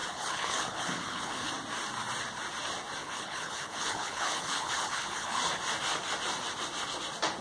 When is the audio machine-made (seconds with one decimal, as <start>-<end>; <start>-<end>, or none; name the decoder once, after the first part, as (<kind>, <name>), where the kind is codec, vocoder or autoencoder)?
0.0-1.5 (codec, HILCodec); 3.0-5.4

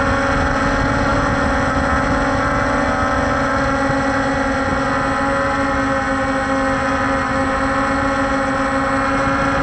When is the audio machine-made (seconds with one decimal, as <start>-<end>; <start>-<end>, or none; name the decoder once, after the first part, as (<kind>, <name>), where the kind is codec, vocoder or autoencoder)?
none

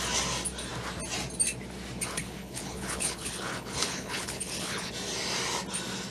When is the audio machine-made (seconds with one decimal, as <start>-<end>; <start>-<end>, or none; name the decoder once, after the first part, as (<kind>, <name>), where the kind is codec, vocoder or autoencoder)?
2.1-4.9 (codec, HILCodec)